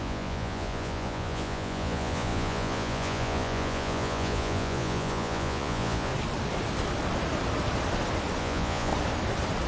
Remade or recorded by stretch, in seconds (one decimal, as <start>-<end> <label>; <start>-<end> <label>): 0.0-6.1 remade; 6.1-8.4 recorded; 8.4-8.9 remade; 8.9-9.7 recorded